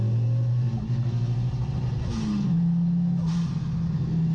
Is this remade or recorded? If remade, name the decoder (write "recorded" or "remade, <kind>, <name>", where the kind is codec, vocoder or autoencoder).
recorded